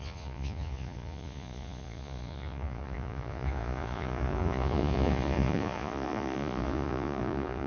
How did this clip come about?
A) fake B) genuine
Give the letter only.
A